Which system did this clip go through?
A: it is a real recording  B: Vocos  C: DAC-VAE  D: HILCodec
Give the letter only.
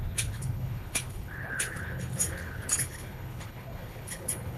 D